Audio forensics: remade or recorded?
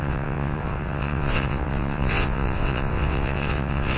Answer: remade